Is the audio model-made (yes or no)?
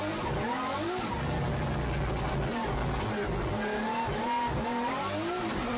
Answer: no